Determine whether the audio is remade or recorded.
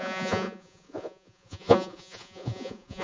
remade